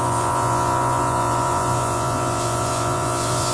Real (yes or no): no